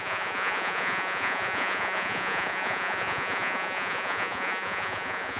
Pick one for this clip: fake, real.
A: fake